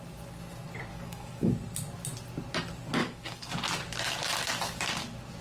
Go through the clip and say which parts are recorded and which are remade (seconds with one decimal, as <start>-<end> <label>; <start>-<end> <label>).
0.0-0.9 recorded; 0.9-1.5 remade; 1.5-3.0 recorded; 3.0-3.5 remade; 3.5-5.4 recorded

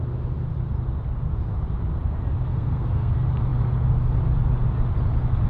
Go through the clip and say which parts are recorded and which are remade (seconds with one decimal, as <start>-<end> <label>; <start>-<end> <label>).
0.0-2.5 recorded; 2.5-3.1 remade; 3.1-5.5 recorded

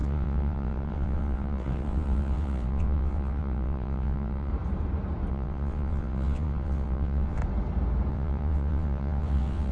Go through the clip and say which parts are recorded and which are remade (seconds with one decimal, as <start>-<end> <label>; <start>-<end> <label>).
0.0-4.5 remade; 4.5-5.3 recorded; 5.3-7.4 remade; 7.4-8.1 recorded; 8.1-9.7 remade